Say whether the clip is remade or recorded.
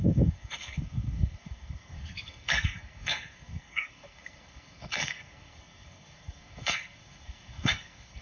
remade